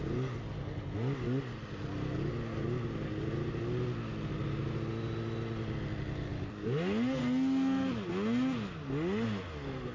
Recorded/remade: recorded